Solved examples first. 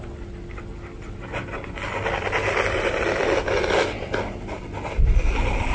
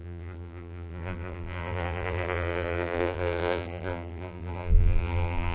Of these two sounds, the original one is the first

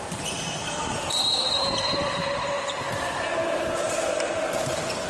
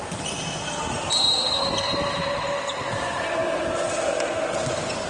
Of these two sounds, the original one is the second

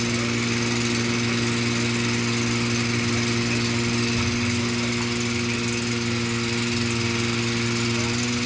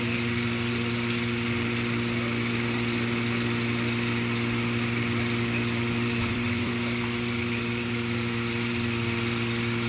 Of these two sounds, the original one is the first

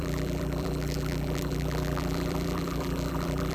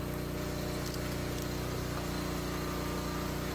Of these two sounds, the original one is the second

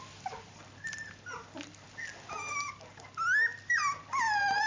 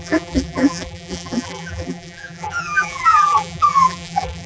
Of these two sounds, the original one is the first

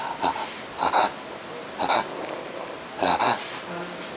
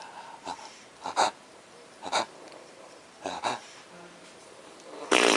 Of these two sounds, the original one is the first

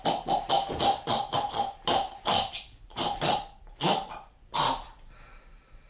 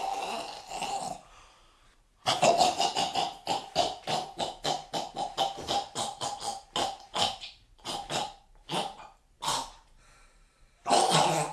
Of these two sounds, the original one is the second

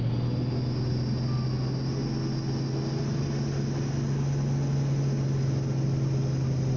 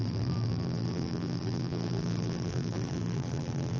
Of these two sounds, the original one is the first